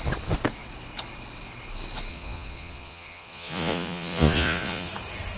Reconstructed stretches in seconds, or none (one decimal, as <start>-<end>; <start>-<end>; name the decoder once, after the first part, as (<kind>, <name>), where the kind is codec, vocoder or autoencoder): 2.1-4.9 (vocoder, Vocos)